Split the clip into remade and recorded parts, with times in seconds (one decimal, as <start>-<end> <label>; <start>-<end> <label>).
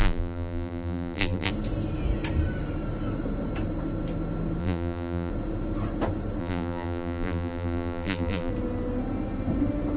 0.0-1.5 remade; 1.5-4.6 recorded; 4.6-5.3 remade; 5.3-6.4 recorded; 6.4-8.5 remade; 8.5-10.0 recorded